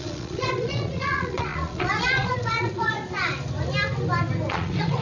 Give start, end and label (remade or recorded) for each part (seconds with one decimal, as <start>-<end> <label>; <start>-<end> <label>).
0.0-3.0 remade; 3.0-4.5 recorded; 4.5-5.0 remade